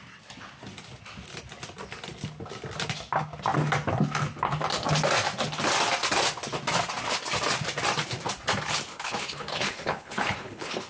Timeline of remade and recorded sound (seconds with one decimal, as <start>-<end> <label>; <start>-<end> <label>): 0.0-8.9 recorded; 8.9-10.9 remade